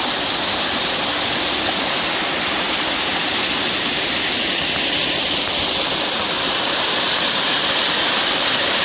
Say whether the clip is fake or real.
real